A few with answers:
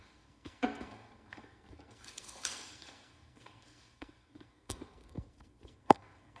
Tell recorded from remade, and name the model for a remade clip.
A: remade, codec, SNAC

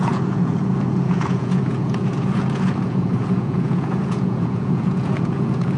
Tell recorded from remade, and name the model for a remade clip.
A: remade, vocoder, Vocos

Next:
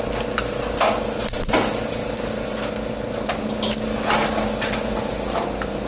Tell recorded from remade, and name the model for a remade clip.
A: recorded